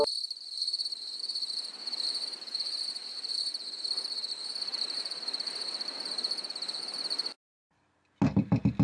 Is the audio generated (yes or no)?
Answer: no